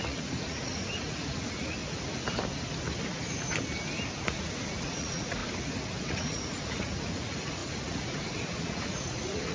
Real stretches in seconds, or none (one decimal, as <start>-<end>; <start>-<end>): 1.8-4.2; 5.4-6.0